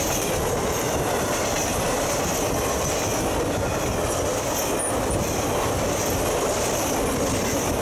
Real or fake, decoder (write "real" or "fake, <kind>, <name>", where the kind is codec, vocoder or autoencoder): real